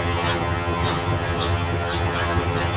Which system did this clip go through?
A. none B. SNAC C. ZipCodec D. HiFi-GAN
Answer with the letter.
D